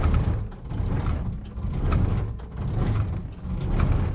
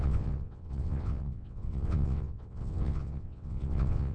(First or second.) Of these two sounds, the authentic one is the first